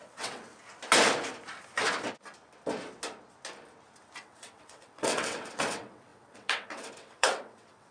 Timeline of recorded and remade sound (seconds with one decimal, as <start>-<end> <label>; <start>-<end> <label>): 0.0-0.5 remade; 0.5-4.2 recorded; 4.2-7.9 remade